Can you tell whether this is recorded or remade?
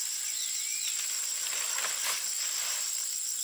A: remade